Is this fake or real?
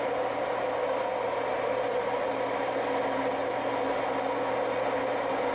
real